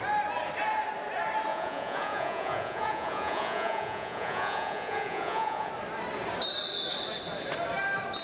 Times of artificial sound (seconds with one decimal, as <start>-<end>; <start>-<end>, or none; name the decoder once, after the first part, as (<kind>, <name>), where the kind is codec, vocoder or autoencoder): 1.5-5.7 (vocoder, Vocos)